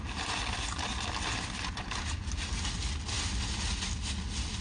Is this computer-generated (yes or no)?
no